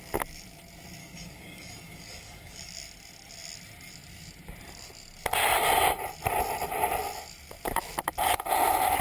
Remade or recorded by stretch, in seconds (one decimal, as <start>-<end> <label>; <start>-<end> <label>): 0.0-1.0 recorded; 1.0-2.7 remade; 2.7-9.0 recorded